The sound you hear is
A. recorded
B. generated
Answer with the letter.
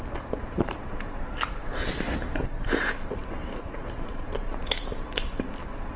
B